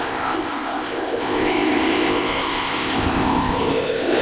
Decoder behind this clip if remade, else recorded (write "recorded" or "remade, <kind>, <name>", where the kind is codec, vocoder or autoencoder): remade, codec, ZipCodec